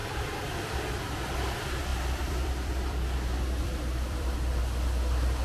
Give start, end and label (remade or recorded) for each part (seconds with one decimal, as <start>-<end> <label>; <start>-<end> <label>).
0.0-1.9 recorded; 1.9-4.6 remade; 4.6-5.4 recorded